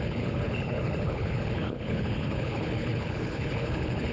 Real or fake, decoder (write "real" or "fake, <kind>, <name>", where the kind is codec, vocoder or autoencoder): fake, codec, HILCodec